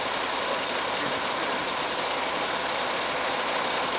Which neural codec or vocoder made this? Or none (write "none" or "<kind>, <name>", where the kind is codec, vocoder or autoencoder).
none